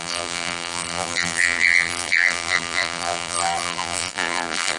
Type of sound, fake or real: fake